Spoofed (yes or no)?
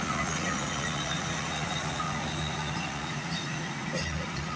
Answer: yes